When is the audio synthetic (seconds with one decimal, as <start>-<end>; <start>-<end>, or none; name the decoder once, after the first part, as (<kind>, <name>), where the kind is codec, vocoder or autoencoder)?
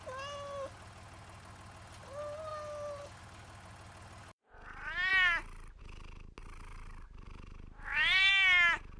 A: 6.7-8.3 (vocoder, BigVGAN v2)